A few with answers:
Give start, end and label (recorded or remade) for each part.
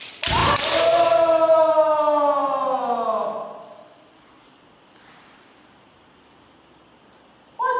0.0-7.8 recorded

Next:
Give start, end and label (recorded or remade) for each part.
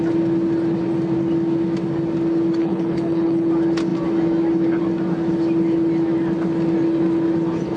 0.0-2.6 recorded; 2.6-3.5 remade; 3.5-7.8 recorded